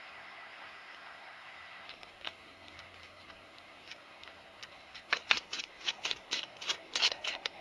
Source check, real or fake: fake